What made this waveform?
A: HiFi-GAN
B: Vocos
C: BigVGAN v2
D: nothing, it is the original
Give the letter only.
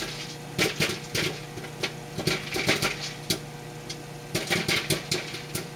D